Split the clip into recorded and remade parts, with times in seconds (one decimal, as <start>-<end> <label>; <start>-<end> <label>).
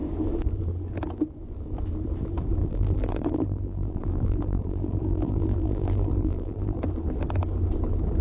0.0-2.6 recorded; 2.6-6.8 remade; 6.8-8.2 recorded